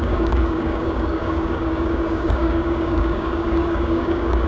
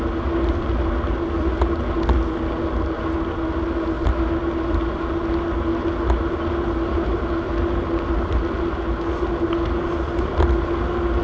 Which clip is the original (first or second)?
second